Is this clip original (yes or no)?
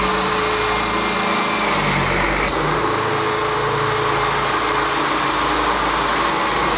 yes